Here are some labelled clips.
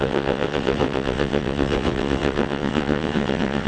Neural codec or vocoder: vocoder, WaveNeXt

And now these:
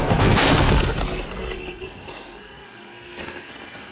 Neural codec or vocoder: codec, SNAC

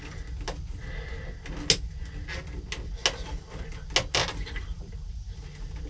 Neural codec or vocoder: none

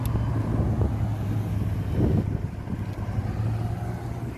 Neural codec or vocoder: none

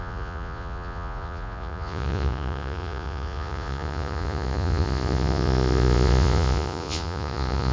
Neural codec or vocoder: vocoder, Vocos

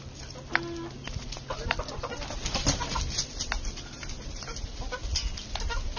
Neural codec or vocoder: none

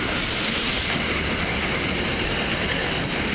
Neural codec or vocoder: none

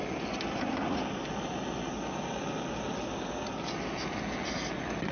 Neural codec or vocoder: none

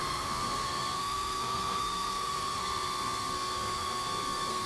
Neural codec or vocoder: codec, SNAC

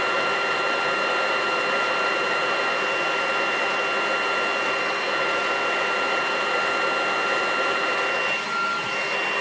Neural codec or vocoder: none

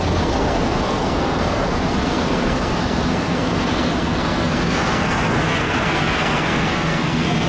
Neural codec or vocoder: codec, SNAC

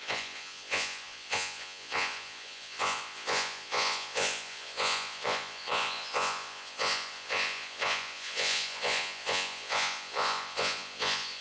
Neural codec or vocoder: vocoder, Vocos